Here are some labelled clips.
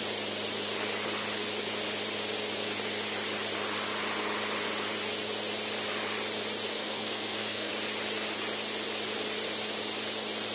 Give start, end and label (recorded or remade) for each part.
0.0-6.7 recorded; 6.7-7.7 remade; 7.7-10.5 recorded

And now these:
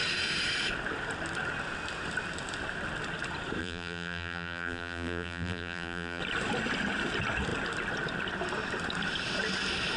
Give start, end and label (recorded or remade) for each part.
0.0-3.6 recorded; 3.6-6.2 remade; 6.2-10.0 recorded

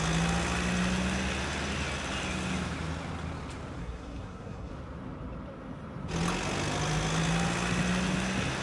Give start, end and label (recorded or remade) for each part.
0.0-3.8 recorded; 3.8-4.7 remade; 4.7-8.6 recorded